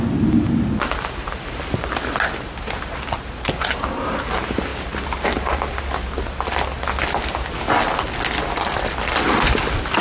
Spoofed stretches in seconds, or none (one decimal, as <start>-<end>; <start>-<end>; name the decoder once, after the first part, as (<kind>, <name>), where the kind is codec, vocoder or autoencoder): none